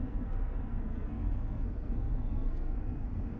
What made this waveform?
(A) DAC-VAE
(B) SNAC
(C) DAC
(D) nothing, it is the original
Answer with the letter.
B